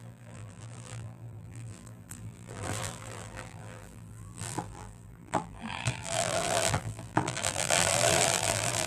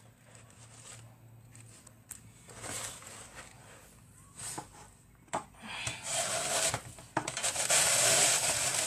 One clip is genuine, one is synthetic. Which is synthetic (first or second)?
first